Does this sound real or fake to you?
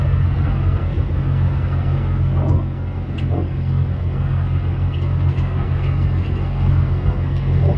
fake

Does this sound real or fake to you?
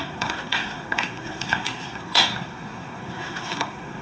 fake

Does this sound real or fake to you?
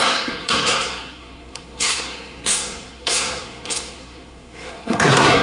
fake